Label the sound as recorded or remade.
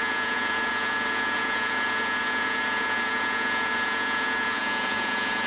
remade